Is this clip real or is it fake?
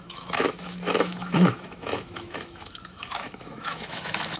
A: fake